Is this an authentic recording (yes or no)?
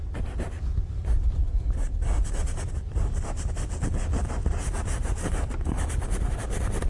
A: yes